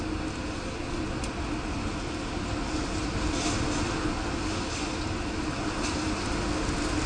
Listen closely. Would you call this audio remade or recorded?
recorded